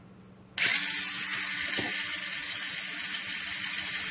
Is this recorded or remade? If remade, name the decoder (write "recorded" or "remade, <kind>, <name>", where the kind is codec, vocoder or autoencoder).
recorded